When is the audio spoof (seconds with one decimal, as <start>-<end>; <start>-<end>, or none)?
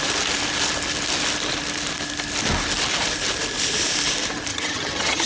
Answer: 4.5-5.3